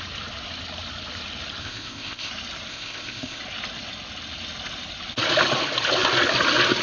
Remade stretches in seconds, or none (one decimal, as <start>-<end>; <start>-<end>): 1.6-2.3; 2.7-3.4